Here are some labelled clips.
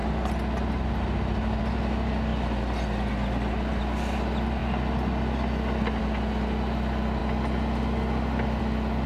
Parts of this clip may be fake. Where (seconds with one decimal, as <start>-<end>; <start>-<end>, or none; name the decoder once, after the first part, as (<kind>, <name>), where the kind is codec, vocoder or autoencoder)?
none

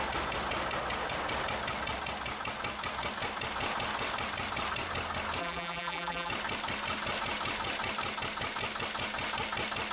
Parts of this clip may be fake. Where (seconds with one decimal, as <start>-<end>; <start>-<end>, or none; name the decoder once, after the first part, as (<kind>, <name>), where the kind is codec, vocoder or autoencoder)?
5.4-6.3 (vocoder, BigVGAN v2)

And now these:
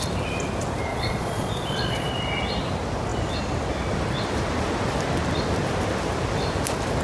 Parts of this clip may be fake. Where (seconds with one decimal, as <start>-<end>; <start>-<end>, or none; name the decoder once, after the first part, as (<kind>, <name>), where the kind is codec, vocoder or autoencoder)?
0.9-2.1 (vocoder, Vocos)